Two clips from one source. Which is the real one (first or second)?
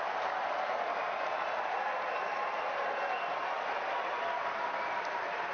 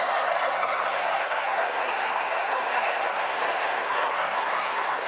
first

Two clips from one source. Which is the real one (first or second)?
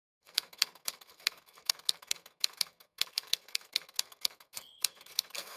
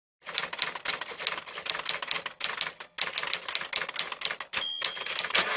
second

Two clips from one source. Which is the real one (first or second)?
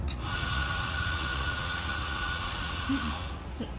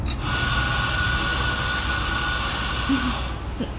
second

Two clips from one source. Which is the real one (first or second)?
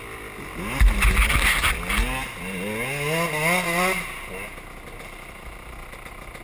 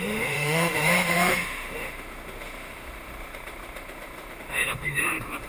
first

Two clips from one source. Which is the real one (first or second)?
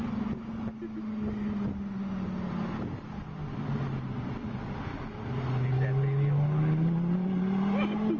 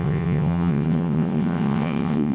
first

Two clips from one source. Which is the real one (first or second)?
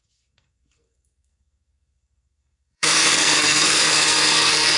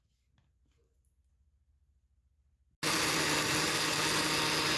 second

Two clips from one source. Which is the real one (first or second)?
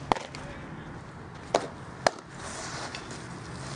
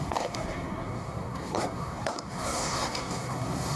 first